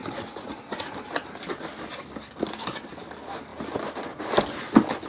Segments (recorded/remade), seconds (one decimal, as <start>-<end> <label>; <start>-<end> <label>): 0.0-5.1 recorded

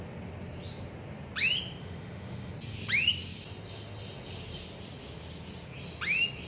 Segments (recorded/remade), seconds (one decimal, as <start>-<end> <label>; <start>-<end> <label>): 0.0-1.8 recorded; 1.8-2.5 remade; 2.5-6.5 recorded

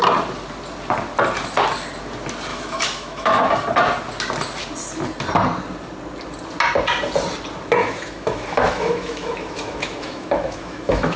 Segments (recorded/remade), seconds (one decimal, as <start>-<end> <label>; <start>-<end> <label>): 0.0-2.5 recorded; 2.5-3.5 remade; 3.5-7.8 recorded; 7.8-11.2 remade